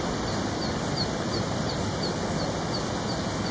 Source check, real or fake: real